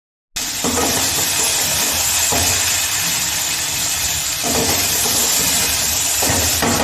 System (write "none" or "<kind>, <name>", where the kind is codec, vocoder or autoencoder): none